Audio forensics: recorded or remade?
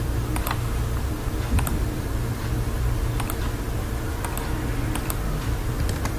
remade